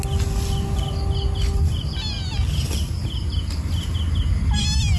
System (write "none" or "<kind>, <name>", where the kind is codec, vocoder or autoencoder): none